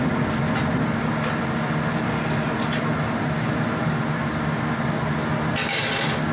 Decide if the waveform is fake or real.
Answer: real